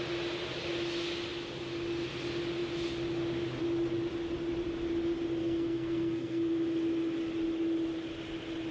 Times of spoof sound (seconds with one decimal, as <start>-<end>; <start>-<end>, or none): 5.4-6.4